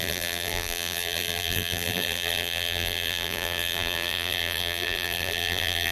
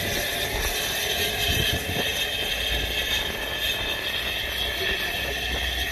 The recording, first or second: second